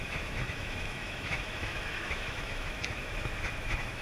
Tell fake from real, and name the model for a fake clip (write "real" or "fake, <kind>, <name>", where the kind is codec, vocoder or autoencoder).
fake, autoencoder, DAC-VAE